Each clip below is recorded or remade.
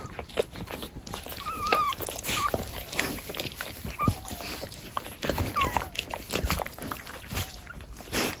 remade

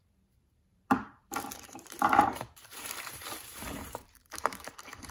remade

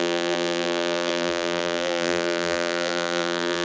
remade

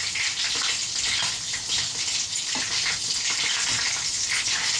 recorded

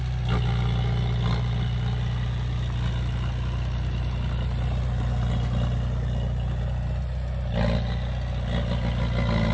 recorded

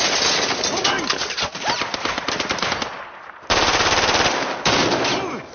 remade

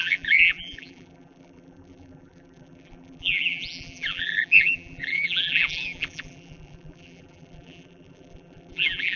remade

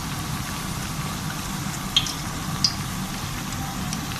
recorded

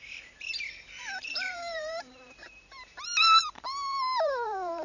remade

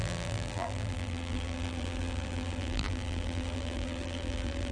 remade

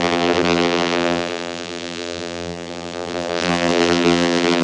remade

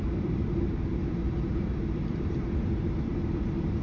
remade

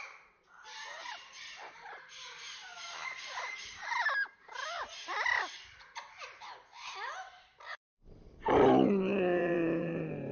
remade